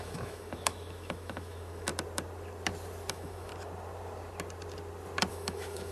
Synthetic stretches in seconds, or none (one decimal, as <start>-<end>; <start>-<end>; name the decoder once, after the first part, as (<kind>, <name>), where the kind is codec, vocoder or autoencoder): 0.0-1.9 (autoencoder, DAC-VAE); 3.1-3.5; 5.3-5.9